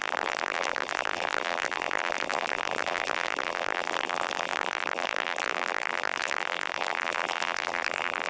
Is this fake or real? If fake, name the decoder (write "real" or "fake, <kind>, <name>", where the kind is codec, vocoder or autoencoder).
fake, vocoder, BigVGAN v2